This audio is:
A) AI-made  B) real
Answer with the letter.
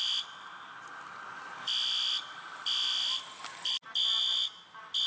B